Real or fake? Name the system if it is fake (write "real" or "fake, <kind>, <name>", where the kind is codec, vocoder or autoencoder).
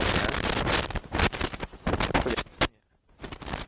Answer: real